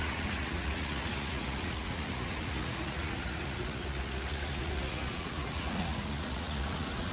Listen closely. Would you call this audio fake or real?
fake